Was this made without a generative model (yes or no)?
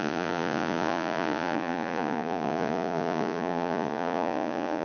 no